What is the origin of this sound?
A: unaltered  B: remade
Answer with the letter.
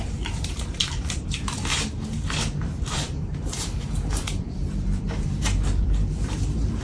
B